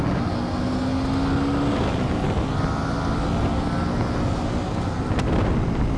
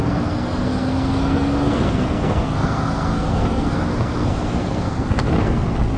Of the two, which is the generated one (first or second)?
second